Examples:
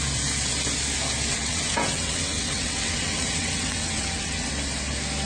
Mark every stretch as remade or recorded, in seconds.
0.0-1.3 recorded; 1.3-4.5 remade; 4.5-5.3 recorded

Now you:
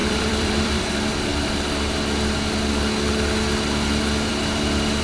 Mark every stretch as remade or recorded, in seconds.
0.0-0.8 remade; 0.8-5.0 recorded

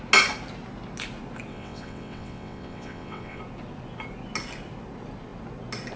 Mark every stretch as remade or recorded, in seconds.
0.0-1.5 recorded; 1.5-3.4 remade; 3.4-6.0 recorded

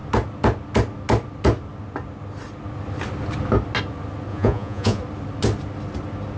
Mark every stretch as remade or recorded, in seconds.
0.0-4.3 recorded; 4.3-5.0 remade; 5.0-6.4 recorded